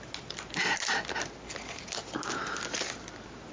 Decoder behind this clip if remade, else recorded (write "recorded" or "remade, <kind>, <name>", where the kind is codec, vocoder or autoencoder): recorded